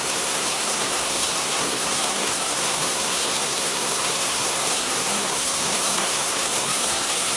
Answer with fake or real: fake